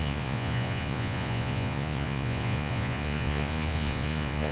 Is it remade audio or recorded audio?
remade